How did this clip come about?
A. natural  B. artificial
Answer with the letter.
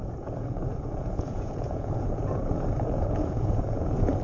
B